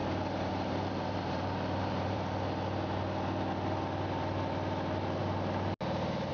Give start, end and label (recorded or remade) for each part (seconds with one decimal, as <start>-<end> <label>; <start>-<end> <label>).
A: 0.0-2.2 remade; 2.2-6.3 recorded

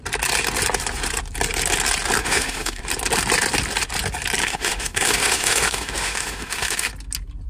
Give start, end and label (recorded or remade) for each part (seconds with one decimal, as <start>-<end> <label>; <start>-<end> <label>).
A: 0.0-2.2 recorded; 2.2-2.8 remade; 2.8-4.4 recorded; 4.4-6.9 remade; 6.9-7.5 recorded

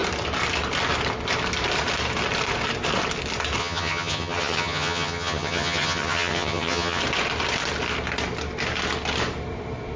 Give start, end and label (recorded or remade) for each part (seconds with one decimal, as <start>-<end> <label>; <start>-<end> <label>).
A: 0.0-3.6 recorded; 3.6-7.0 remade; 7.0-10.0 recorded